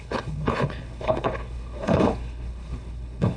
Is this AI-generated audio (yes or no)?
yes